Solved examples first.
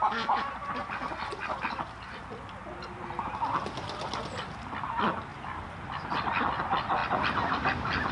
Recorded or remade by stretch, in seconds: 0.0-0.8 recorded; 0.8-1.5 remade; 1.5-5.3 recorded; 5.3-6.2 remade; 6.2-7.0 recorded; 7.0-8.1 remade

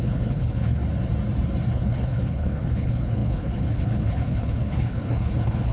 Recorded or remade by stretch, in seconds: 0.0-0.8 remade; 0.8-1.7 recorded; 1.7-5.7 remade

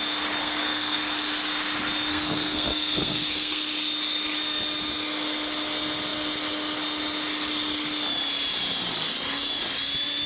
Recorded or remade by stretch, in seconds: 0.0-0.4 recorded; 0.4-1.0 remade; 1.0-2.1 recorded; 2.1-3.6 remade; 3.6-10.3 recorded

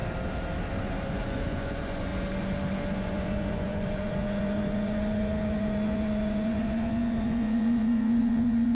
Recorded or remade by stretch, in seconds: 0.0-0.7 recorded; 0.7-2.1 remade; 2.1-3.0 recorded; 3.0-8.7 remade

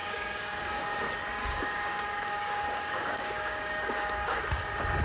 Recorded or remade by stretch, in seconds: 0.0-0.8 remade; 0.8-1.4 recorded; 1.4-4.4 remade; 4.4-5.0 recorded